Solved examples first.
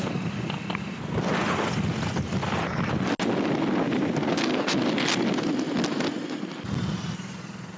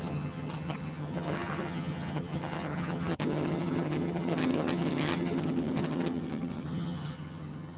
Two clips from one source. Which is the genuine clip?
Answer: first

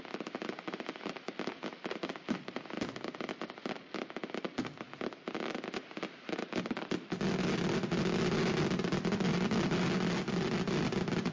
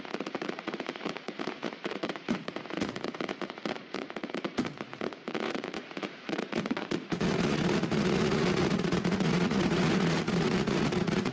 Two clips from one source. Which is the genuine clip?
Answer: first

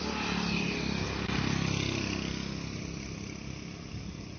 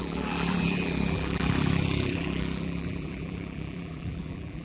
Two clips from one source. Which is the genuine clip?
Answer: first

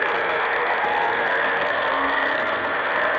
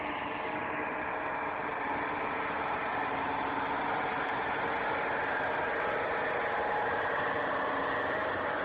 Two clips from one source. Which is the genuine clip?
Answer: second